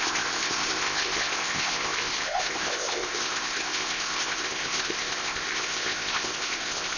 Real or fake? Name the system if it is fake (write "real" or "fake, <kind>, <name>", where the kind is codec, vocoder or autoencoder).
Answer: fake, codec, ZipCodec